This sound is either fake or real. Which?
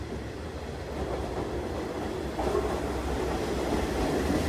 real